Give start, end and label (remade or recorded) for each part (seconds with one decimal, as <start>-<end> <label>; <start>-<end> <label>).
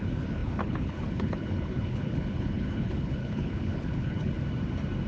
0.0-4.4 remade; 4.4-5.1 recorded